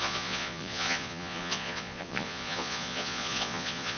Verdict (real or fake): fake